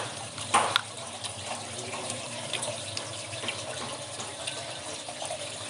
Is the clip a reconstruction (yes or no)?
yes